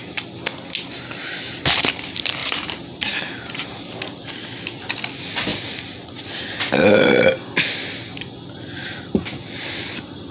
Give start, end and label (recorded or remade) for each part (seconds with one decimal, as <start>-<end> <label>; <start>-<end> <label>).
0.0-2.4 recorded; 2.4-4.3 remade; 4.3-10.3 recorded